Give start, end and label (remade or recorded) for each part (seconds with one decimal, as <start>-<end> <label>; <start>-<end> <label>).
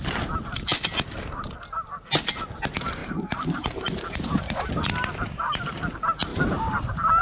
0.0-3.0 recorded; 3.0-4.4 remade; 4.4-6.3 recorded; 6.3-7.2 remade